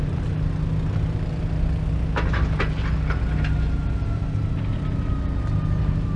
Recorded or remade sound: recorded